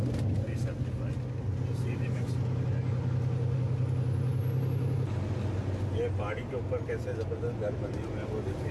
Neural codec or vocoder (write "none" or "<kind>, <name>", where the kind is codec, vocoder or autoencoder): none